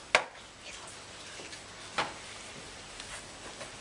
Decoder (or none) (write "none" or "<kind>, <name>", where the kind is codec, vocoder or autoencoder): none